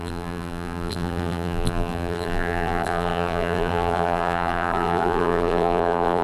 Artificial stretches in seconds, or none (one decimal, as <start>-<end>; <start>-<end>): 0.0-6.2